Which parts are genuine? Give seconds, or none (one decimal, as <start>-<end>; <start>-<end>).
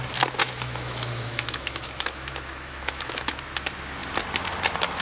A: 0.0-0.4; 3.3-5.0